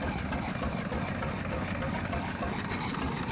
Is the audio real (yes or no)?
yes